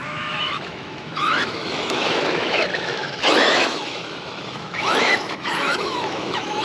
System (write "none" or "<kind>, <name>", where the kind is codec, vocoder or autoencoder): autoencoder, DAC-VAE